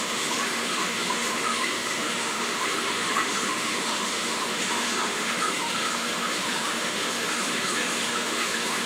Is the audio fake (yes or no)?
yes